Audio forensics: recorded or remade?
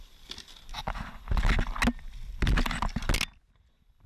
recorded